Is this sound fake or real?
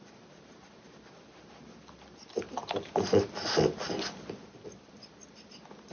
real